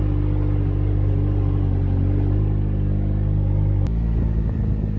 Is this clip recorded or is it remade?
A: recorded